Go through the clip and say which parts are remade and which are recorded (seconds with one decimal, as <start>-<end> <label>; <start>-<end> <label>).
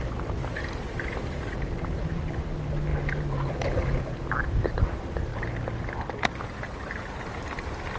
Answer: 0.0-8.0 recorded